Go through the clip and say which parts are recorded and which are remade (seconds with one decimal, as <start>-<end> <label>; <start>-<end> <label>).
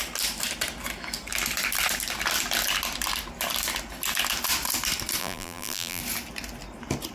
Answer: 0.0-5.2 recorded; 5.2-6.0 remade; 6.0-7.1 recorded